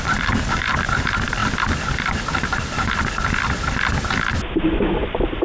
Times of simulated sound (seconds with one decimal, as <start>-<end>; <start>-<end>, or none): 0.0-1.4; 4.6-5.4

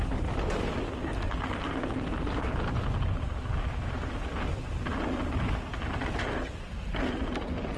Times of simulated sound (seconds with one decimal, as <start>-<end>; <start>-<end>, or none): none

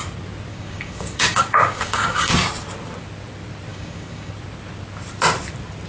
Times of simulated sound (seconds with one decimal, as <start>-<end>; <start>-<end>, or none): 0.5-2.3; 3.7-4.3

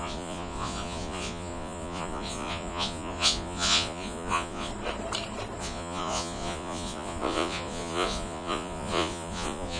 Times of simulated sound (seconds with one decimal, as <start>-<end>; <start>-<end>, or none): 0.0-4.7; 5.6-9.8